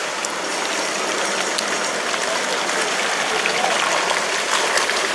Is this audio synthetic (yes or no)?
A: yes